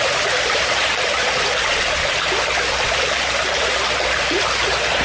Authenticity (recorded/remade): recorded